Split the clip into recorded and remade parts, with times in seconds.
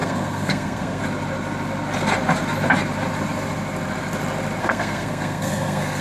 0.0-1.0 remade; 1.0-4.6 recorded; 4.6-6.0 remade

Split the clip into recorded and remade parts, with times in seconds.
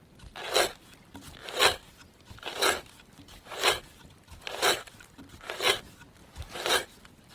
0.0-1.8 recorded; 1.8-5.3 remade; 5.3-6.2 recorded; 6.2-6.7 remade; 6.7-7.3 recorded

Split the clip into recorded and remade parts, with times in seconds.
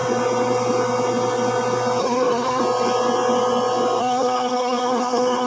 0.0-2.0 recorded; 2.0-2.6 remade; 2.6-4.0 recorded; 4.0-5.5 remade